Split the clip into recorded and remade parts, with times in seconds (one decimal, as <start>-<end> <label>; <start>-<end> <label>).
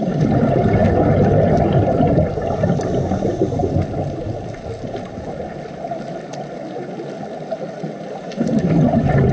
0.0-9.3 recorded